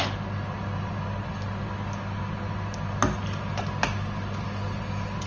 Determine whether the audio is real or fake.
real